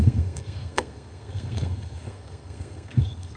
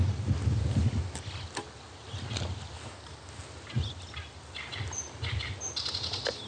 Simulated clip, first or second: first